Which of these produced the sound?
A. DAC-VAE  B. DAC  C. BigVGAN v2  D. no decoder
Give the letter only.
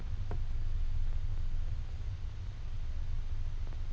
D